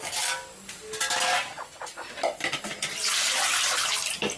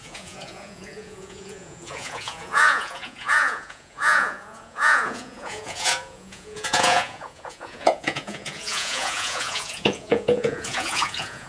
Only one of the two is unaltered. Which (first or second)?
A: first